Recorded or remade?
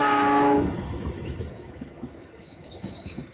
remade